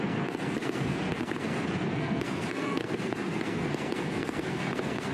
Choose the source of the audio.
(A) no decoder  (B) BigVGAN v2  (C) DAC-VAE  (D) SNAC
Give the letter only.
D